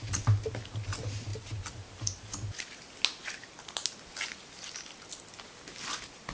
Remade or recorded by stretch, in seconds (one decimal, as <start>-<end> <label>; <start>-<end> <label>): 0.0-6.3 recorded